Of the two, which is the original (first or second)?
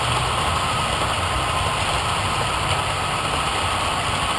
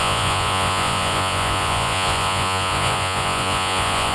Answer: first